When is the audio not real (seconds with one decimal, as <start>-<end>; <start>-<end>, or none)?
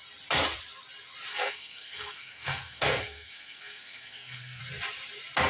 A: 1.3-4.6